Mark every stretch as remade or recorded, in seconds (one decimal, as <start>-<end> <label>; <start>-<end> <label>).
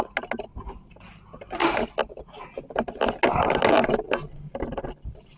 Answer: 0.0-5.4 recorded